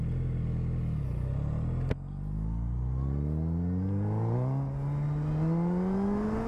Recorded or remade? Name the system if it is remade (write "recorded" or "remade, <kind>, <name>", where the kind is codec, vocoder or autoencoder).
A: recorded